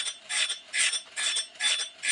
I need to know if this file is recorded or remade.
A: recorded